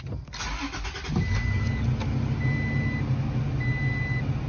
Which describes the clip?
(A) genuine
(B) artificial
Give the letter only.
A